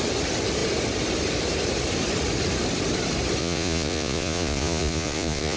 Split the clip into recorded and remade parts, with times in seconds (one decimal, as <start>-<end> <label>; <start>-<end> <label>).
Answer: 0.0-3.4 recorded; 3.4-5.6 remade